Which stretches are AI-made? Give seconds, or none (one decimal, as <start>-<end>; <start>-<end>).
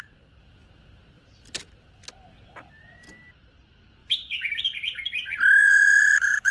5.6-6.5